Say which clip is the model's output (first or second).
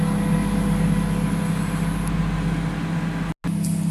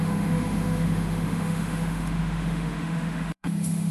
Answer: second